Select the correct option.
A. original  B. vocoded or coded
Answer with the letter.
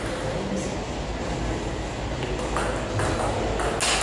A